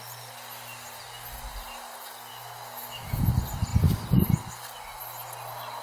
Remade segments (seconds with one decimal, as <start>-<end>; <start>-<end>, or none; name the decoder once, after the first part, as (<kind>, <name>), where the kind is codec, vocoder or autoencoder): 2.3-3.2 (autoencoder, DAC-VAE)